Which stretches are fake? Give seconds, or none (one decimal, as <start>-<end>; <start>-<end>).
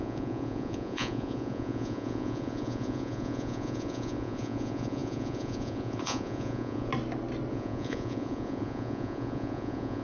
0.0-6.9; 7.5-10.0